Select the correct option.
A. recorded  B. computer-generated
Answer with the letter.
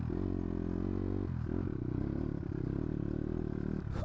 A